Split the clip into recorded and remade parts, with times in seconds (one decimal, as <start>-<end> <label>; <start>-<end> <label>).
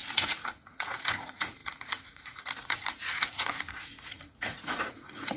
0.0-5.4 remade